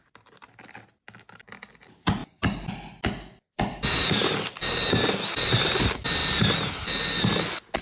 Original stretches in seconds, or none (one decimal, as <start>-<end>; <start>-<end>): 0.0-7.8